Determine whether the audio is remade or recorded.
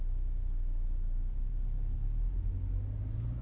recorded